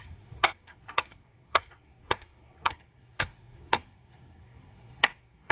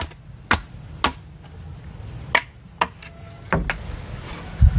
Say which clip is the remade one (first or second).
first